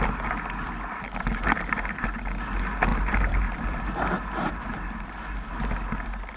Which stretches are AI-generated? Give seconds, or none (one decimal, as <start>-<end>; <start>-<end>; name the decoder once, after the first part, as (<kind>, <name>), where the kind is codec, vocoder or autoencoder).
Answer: 2.9-5.6 (vocoder, BigVGAN v2)

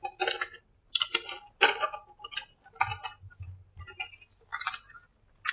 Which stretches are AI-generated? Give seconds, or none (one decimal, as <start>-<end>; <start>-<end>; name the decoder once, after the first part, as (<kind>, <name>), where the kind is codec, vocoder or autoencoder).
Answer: 2.9-3.8 (vocoder, BigVGAN v2)

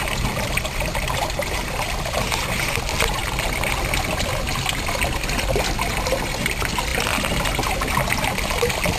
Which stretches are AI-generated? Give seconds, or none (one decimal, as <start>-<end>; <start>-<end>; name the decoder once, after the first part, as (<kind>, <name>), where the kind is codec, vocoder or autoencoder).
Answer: none

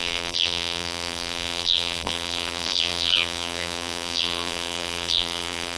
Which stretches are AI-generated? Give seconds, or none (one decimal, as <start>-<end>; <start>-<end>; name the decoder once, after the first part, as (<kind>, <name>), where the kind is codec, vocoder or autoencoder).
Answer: 0.0-5.8 (vocoder, BigVGAN v2)

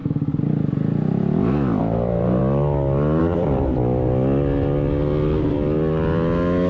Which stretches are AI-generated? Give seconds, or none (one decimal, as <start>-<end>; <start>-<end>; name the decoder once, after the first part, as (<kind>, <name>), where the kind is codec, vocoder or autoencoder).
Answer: 1.8-2.4 (vocoder, BigVGAN v2); 3.2-3.7